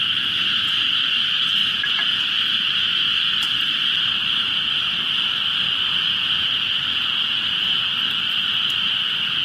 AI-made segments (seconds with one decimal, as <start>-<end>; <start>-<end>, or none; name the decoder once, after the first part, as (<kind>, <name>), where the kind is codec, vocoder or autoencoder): none